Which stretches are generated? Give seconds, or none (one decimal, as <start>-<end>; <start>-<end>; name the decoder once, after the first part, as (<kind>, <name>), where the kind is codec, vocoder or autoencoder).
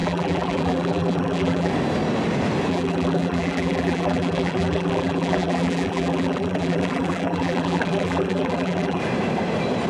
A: 0.0-1.7 (vocoder, BigVGAN v2); 2.7-9.0